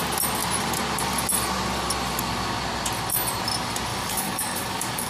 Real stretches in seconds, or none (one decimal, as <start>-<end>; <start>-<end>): 0.0-3.9